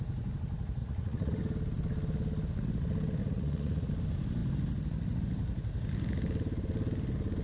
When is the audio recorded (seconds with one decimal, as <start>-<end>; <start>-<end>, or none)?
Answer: 0.0-0.8; 1.4-3.2; 3.9-7.4